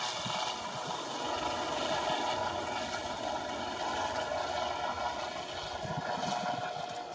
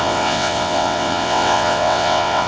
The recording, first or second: first